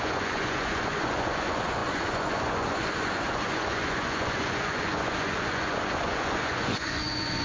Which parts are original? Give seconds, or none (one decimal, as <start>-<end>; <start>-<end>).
none

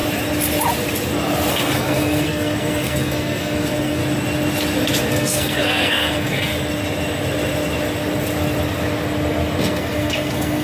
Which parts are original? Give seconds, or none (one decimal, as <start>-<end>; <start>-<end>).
0.0-1.5; 4.0-5.1; 6.5-9.6

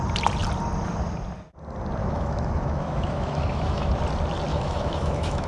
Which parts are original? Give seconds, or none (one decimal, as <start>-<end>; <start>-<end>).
0.0-2.0; 3.9-4.5

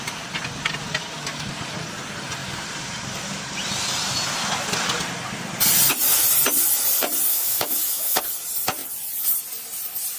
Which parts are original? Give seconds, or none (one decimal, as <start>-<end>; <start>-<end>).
0.0-7.3; 8.2-10.2